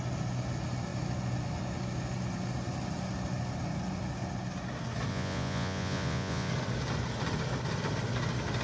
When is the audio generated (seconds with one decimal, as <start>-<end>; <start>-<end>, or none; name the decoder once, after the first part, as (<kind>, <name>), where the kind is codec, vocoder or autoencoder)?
5.1-6.5 (vocoder, Vocos)